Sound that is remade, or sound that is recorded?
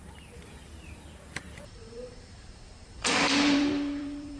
remade